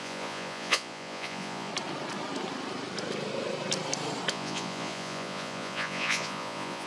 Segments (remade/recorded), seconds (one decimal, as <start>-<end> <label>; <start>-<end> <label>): 0.0-1.7 remade; 1.7-4.3 recorded; 4.3-6.9 remade

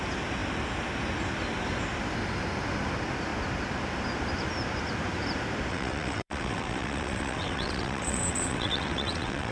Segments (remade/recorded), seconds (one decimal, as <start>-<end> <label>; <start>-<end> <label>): 0.0-5.7 recorded; 5.7-9.5 remade

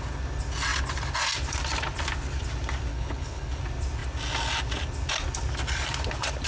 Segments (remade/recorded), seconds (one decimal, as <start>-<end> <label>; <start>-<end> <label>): 0.0-2.9 recorded; 2.9-3.6 remade; 3.6-6.5 recorded

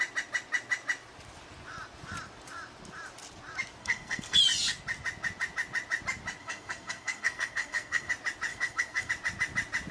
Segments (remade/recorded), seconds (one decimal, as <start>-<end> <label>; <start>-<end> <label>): 0.0-3.8 recorded; 3.8-4.4 remade; 4.4-6.4 recorded; 6.4-8.1 remade; 8.1-8.5 recorded; 8.5-9.1 remade; 9.1-9.9 recorded

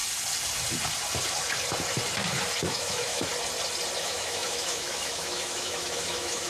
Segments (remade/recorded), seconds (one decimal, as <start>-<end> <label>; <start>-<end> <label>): 0.0-2.6 recorded; 2.6-3.3 remade; 3.3-4.0 recorded; 4.0-6.5 remade

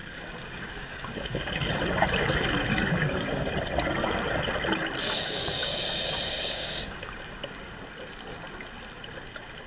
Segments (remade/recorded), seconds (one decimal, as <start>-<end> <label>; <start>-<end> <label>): 0.0-1.7 remade; 1.7-2.7 recorded; 2.7-3.4 remade; 3.4-5.0 recorded; 5.0-7.6 remade; 7.6-9.7 recorded

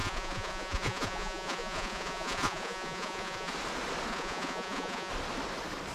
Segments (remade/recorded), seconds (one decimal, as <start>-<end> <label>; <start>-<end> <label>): 0.0-3.5 remade; 3.5-4.1 recorded; 4.1-5.1 remade; 5.1-5.9 recorded